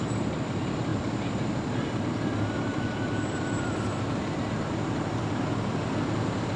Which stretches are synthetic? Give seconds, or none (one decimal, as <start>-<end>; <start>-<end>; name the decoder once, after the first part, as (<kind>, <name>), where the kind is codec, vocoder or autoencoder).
0.0-2.7 (vocoder, BigVGAN v2); 3.3-6.6